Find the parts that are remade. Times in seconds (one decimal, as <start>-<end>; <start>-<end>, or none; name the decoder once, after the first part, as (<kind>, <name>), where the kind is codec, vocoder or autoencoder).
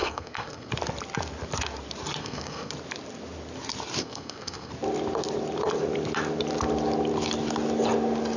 0.0-0.7 (codec, SNAC); 2.2-2.7; 4.0-4.7